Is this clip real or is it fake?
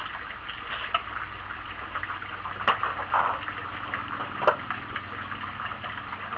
real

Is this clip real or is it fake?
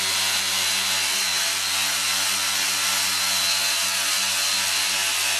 real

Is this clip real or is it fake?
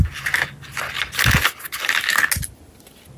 real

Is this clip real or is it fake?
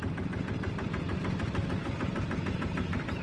real